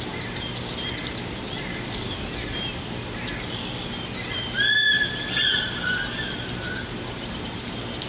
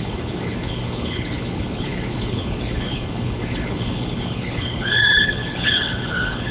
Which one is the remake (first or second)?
second